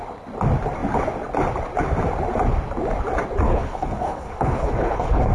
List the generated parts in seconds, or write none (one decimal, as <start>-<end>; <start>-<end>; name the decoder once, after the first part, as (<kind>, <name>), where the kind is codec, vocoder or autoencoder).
3.5-5.3 (codec, HILCodec)